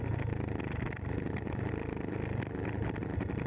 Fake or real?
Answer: real